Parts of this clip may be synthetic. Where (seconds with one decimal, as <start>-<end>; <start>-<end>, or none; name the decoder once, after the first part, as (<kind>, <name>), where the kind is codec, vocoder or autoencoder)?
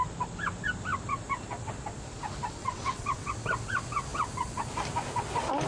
2.6-3.3 (vocoder, WaveNeXt)